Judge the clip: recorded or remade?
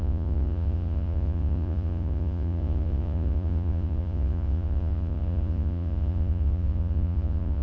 remade